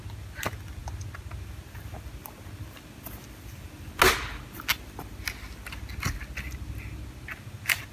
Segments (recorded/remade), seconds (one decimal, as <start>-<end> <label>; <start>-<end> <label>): 0.0-7.9 recorded